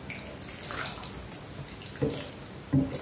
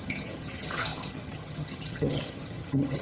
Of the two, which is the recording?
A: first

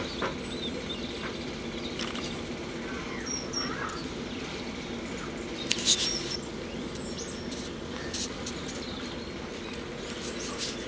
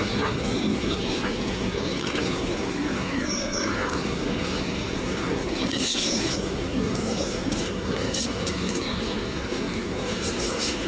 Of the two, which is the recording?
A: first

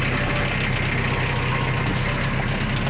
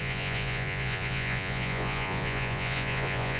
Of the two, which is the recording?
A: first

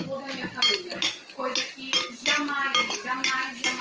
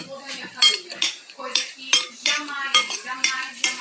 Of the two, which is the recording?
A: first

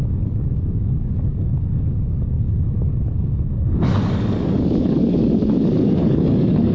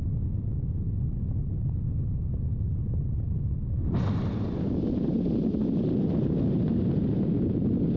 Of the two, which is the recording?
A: second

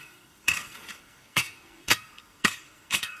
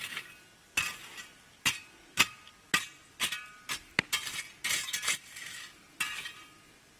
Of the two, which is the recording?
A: second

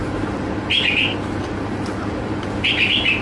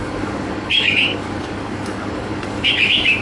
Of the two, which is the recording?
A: first